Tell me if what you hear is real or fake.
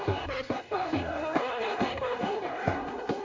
fake